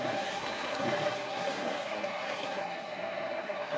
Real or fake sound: fake